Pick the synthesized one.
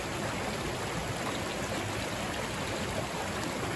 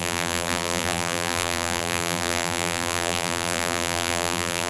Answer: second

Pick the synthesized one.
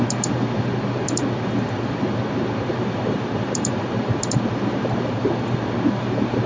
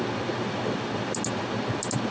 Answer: first